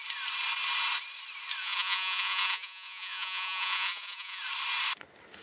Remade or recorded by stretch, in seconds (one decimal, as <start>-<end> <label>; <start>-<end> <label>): 0.0-1.6 recorded; 1.6-4.4 remade; 4.4-5.4 recorded